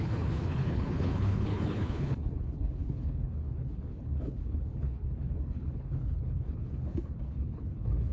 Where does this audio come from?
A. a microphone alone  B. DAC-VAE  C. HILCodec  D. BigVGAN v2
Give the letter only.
C